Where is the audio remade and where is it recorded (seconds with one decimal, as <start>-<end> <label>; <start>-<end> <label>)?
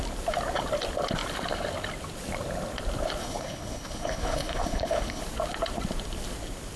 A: 0.0-3.2 recorded; 3.2-5.2 remade; 5.2-6.8 recorded